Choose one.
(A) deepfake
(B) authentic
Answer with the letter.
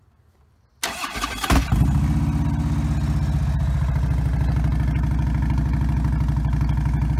B